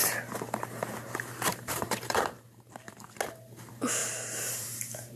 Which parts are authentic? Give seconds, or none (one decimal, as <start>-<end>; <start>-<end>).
3.1-4.0